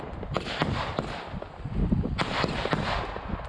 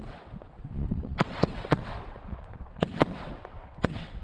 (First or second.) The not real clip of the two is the second